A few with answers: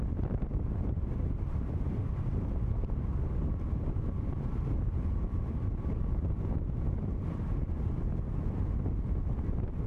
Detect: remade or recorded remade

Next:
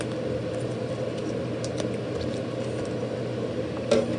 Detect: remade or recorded recorded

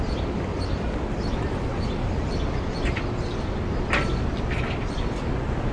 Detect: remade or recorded recorded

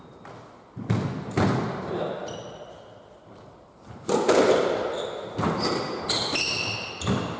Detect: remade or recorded recorded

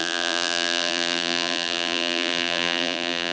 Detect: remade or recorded remade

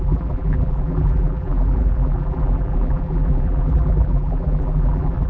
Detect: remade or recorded remade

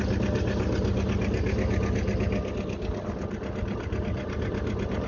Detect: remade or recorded recorded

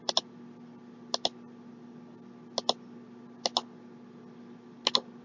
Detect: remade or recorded recorded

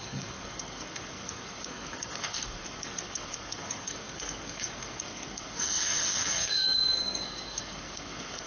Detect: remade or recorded remade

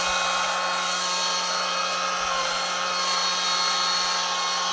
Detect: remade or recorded recorded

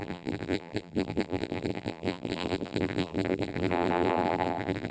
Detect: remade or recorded remade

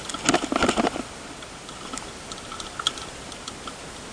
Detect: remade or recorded recorded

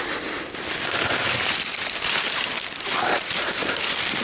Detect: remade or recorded recorded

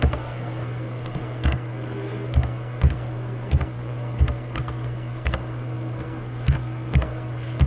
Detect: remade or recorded remade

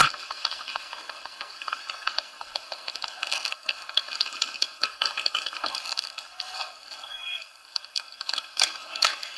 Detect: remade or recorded remade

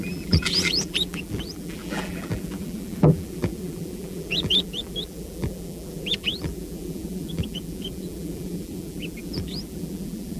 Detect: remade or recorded remade